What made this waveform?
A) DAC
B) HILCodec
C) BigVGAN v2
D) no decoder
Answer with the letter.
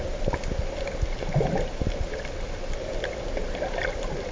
D